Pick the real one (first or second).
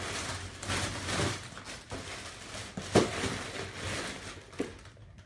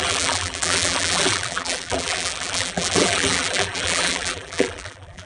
first